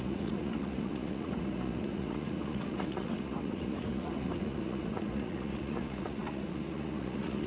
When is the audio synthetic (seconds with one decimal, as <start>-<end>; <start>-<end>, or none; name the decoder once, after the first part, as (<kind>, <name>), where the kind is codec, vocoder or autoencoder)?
0.0-7.5 (vocoder, Vocos)